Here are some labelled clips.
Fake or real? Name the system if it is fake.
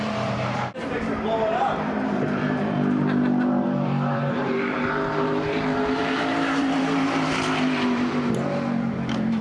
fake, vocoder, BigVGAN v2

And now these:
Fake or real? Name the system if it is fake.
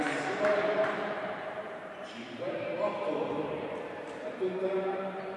fake, vocoder, BigVGAN v2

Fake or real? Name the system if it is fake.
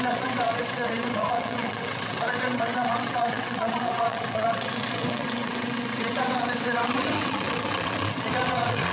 fake, vocoder, WaveNeXt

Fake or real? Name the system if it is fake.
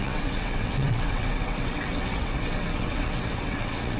fake, vocoder, WaveNeXt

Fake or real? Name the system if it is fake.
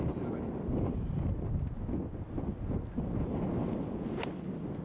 real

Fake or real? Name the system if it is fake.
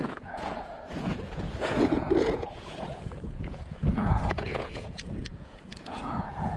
fake, vocoder, Vocos